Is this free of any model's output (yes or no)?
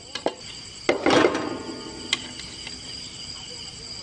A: yes